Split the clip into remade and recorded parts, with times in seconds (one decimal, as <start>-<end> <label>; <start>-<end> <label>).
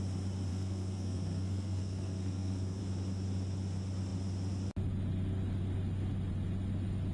0.0-0.5 recorded; 0.5-2.8 remade; 2.8-7.1 recorded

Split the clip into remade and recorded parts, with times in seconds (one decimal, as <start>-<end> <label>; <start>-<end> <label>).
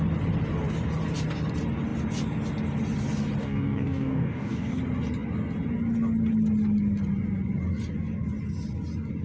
0.0-3.4 recorded; 3.4-4.8 remade; 4.8-9.2 recorded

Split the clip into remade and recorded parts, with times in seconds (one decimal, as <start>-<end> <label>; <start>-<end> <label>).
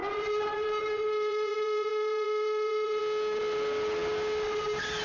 0.0-3.0 remade; 3.0-5.0 recorded